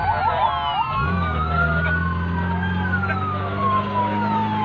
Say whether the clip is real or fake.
real